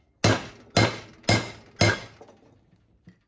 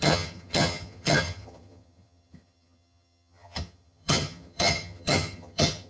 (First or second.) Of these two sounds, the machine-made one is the second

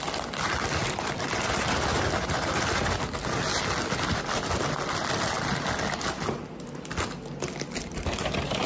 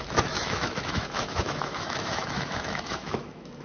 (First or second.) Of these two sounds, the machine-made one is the second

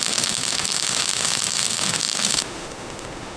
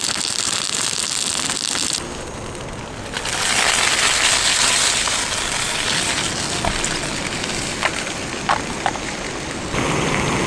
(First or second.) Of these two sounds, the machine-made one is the first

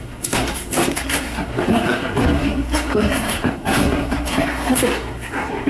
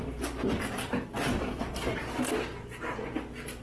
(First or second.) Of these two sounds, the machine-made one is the first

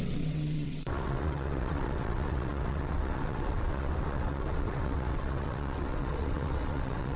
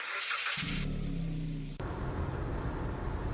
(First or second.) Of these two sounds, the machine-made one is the first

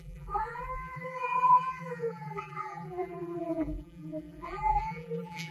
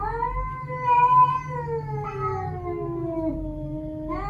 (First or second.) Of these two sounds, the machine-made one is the first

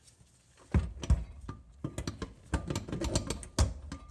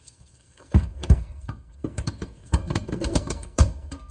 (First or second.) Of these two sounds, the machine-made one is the second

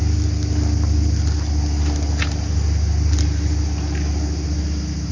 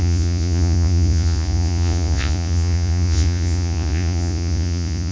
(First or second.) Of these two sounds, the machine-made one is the second